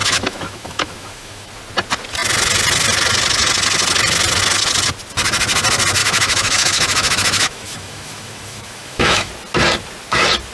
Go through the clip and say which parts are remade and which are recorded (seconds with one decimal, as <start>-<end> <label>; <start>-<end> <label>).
0.0-1.5 remade; 1.5-6.0 recorded; 6.0-9.3 remade; 9.3-10.5 recorded